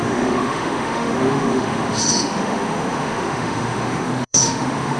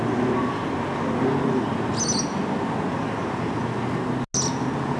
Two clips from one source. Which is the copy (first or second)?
first